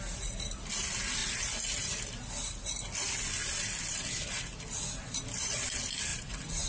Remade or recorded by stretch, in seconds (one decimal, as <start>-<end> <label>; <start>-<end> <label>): 0.0-6.1 recorded; 6.1-6.7 remade